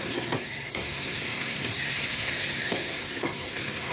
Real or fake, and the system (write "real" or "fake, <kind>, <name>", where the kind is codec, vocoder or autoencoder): fake, codec, SNAC